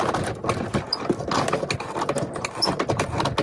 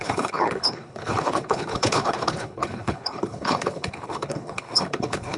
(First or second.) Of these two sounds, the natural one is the first